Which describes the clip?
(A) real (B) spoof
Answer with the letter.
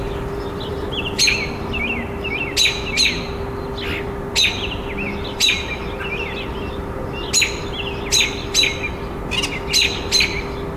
A